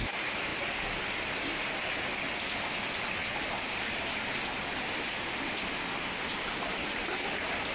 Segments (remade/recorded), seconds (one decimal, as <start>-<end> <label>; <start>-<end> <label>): 0.0-7.7 recorded